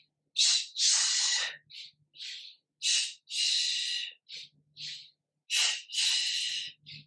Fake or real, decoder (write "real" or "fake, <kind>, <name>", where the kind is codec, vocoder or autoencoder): real